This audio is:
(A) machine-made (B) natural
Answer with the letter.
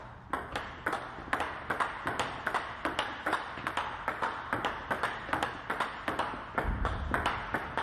B